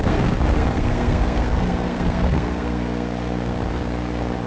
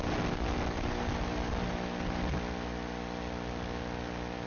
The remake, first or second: first